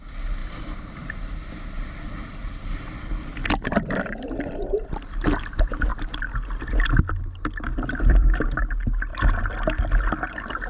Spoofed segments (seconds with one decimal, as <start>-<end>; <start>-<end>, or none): 0.4-5.5; 7.7-8.3